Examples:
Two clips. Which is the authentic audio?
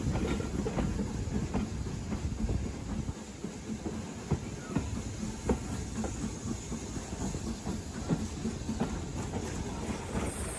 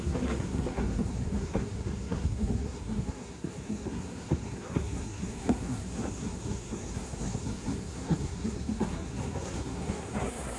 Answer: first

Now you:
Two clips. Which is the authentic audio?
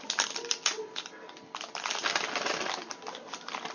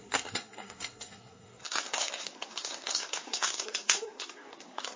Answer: first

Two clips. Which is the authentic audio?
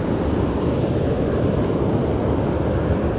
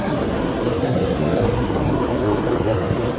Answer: first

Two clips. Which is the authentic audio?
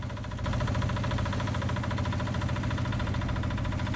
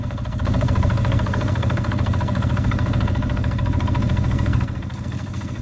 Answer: first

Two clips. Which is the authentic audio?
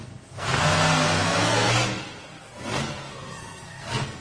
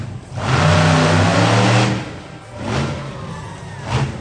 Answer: second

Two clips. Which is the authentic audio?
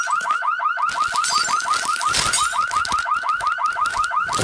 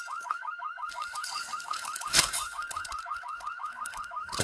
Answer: first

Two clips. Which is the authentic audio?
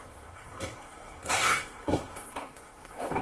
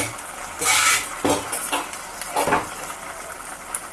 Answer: second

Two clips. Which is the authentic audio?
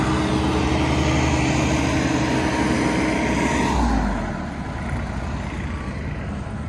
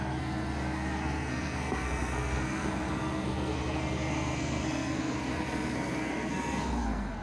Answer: first